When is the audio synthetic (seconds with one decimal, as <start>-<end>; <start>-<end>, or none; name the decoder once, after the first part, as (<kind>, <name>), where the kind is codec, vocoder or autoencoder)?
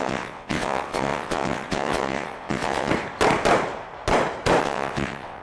0.0-2.9 (vocoder, WaveNeXt); 4.6-5.4